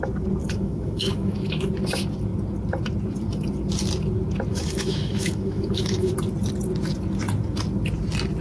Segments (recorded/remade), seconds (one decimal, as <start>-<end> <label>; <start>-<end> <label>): 0.0-0.4 recorded; 0.4-1.7 remade; 1.7-4.5 recorded; 4.5-6.1 remade; 6.1-8.4 recorded